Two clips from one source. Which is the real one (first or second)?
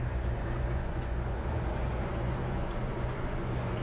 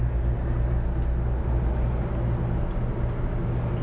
second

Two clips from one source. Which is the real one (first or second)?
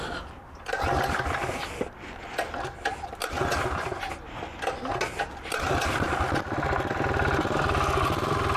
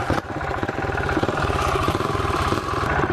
first